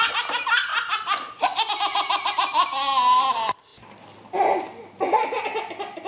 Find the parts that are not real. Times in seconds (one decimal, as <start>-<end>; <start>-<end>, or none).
none